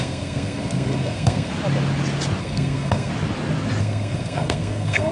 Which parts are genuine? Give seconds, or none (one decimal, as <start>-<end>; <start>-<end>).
1.5-2.4; 3.1-3.8